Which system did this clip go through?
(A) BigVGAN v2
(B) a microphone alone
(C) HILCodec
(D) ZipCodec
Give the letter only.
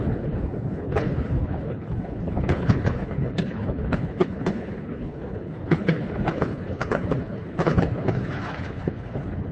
C